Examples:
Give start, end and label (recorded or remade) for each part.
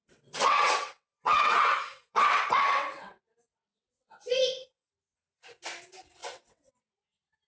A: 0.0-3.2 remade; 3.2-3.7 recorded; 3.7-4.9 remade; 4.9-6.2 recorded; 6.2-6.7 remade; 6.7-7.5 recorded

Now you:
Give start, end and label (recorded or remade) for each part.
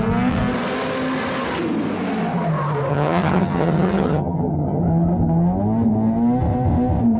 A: 0.0-2.9 recorded; 2.9-4.8 remade; 4.8-7.2 recorded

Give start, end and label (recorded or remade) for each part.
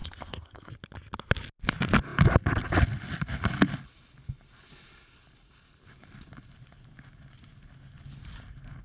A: 0.0-0.7 remade; 0.7-8.8 recorded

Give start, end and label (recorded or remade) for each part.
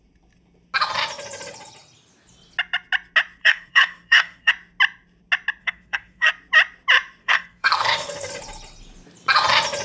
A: 0.0-3.4 recorded; 3.4-4.5 remade; 4.5-5.6 recorded; 5.6-6.3 remade; 6.3-7.2 recorded; 7.2-8.3 remade; 8.3-9.8 recorded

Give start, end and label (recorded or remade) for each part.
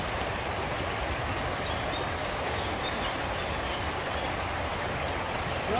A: 0.0-2.2 recorded; 2.2-2.7 remade; 2.7-5.8 recorded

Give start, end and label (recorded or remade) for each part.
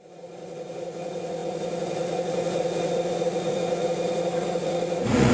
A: 0.0-5.3 remade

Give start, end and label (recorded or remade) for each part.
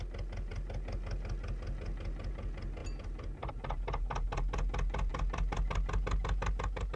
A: 0.0-7.0 recorded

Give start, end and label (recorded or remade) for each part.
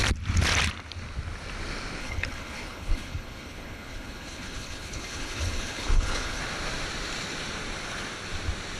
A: 0.0-2.0 recorded; 2.0-6.4 remade; 6.4-8.8 recorded